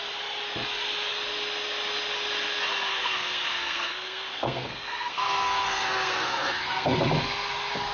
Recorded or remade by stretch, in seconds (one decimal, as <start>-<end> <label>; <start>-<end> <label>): 0.0-2.9 recorded; 2.9-7.0 remade; 7.0-7.9 recorded